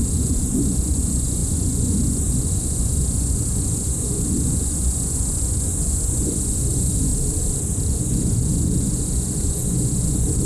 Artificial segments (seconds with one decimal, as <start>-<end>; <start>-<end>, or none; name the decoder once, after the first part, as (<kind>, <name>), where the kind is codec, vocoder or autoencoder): 0.0-7.1 (vocoder, Vocos); 7.9-10.5